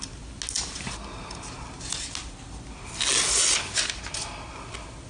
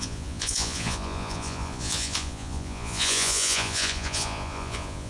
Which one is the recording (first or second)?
first